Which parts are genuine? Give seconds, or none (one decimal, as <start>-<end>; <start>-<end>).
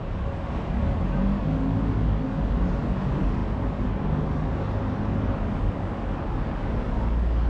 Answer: none